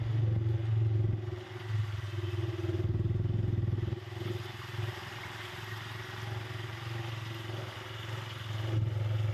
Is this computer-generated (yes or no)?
no